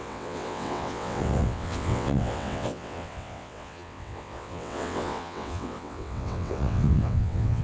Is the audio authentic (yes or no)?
no